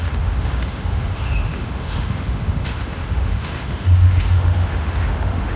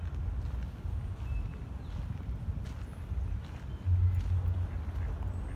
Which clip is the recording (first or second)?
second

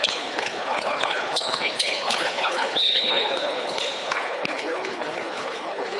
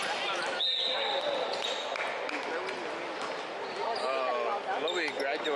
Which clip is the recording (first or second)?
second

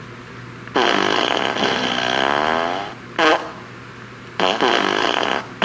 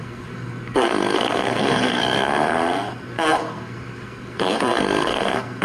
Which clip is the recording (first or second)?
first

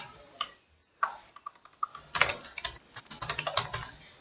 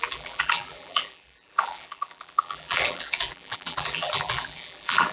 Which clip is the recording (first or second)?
first